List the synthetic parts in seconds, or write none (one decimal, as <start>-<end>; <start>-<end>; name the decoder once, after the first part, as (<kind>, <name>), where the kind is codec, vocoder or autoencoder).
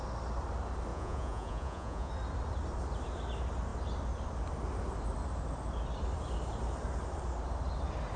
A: 0.9-2.1 (vocoder, Vocos)